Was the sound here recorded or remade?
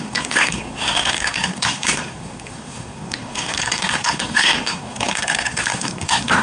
remade